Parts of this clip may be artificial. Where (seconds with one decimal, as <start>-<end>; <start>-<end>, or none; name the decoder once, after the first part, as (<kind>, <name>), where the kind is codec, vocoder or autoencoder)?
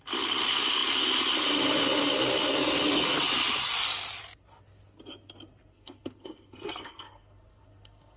5.7-8.2 (codec, SNAC)